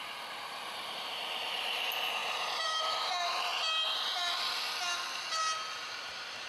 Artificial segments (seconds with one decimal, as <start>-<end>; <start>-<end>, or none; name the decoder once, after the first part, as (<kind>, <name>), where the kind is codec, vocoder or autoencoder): 0.0-3.5 (vocoder, BigVGAN v2); 5.7-6.5